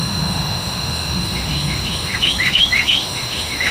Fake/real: fake